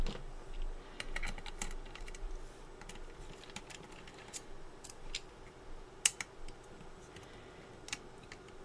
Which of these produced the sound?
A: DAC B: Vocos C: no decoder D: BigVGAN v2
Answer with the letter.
C